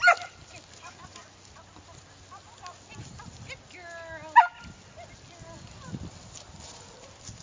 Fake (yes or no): no